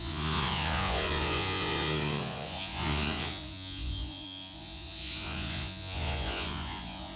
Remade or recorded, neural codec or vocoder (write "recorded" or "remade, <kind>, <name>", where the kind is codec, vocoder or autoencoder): remade, vocoder, Vocos